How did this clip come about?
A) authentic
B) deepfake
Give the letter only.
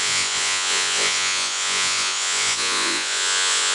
B